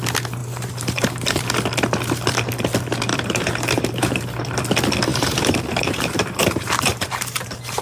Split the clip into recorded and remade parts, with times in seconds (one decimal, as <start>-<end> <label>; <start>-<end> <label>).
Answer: 0.0-0.4 recorded; 0.4-1.5 remade; 1.5-3.1 recorded; 3.1-4.6 remade; 4.6-5.1 recorded; 5.1-7.8 remade